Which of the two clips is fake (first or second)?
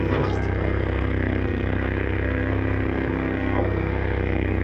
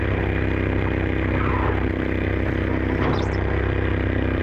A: first